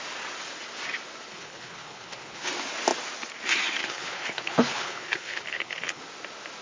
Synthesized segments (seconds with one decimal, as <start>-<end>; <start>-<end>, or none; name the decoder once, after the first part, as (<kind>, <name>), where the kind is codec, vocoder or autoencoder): 1.3-2.5 (codec, HILCodec); 3.8-6.0